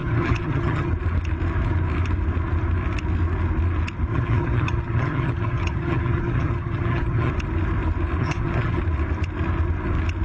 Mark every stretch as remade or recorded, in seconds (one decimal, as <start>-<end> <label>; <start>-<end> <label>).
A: 0.0-0.9 remade; 0.9-4.1 recorded; 4.1-7.3 remade; 7.3-8.2 recorded; 8.2-8.8 remade; 8.8-10.2 recorded

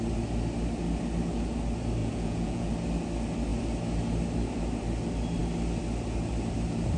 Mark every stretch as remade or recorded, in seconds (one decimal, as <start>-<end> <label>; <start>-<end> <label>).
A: 0.0-2.0 recorded; 2.0-2.7 remade; 2.7-7.0 recorded

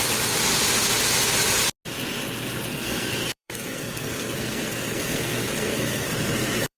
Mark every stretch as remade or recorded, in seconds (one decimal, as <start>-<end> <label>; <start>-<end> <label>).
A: 0.0-2.7 recorded; 2.7-6.8 remade